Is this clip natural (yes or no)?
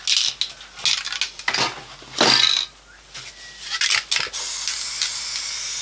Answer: yes